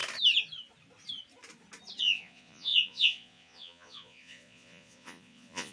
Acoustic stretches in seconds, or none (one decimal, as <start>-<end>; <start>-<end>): 0.0-2.0